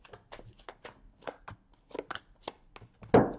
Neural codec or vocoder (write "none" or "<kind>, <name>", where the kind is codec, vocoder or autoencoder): none